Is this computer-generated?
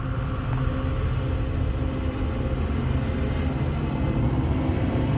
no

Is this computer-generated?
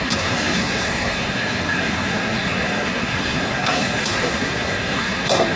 yes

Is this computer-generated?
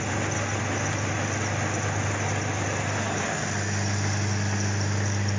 no